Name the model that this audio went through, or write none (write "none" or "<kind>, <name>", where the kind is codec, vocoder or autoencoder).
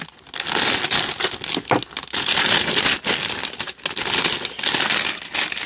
none